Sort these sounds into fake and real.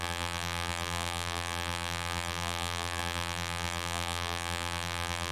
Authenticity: fake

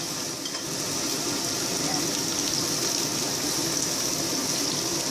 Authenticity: real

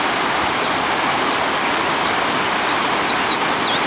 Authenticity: real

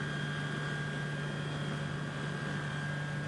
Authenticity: real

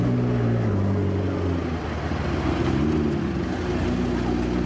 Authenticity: real